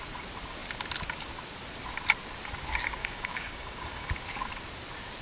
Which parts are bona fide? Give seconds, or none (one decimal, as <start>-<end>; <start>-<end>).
0.0-3.0; 4.1-5.2

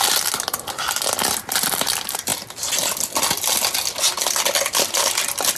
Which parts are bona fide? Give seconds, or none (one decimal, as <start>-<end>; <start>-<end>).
0.0-5.6

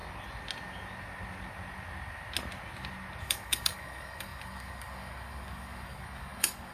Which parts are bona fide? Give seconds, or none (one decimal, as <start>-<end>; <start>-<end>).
0.0-3.2

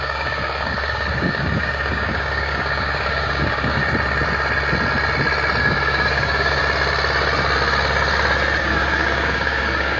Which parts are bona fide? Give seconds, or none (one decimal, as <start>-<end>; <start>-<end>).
3.8-5.6; 6.6-8.6